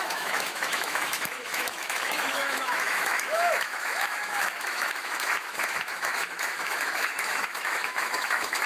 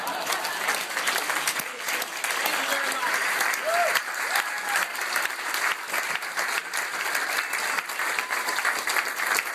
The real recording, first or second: second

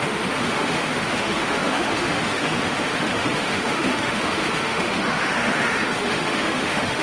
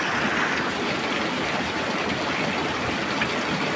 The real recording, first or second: second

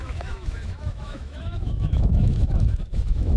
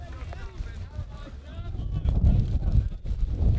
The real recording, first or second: second